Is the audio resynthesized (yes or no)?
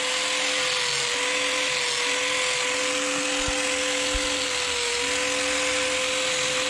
no